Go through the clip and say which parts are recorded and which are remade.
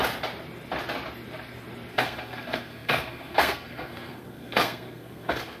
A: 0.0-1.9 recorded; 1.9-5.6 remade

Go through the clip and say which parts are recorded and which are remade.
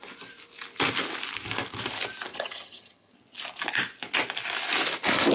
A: 0.0-2.3 recorded; 2.3-3.1 remade; 3.1-5.3 recorded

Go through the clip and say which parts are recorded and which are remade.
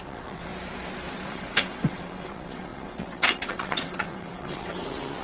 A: 0.0-0.5 remade; 0.5-1.1 recorded; 1.1-5.2 remade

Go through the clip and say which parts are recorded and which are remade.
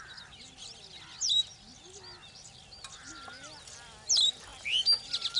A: 0.0-5.4 recorded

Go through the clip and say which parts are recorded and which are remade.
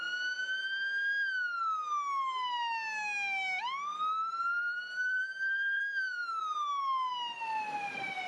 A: 0.0-3.9 recorded; 3.9-6.4 remade; 6.4-8.3 recorded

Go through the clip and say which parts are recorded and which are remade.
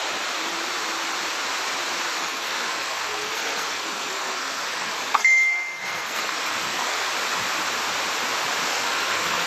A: 0.0-2.2 recorded; 2.2-7.1 remade; 7.1-8.7 recorded; 8.7-9.5 remade